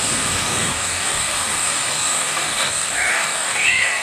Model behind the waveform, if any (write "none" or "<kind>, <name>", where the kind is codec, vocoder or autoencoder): codec, DAC